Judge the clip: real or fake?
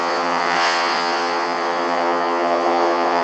fake